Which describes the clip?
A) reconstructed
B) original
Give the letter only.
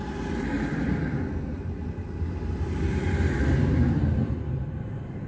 B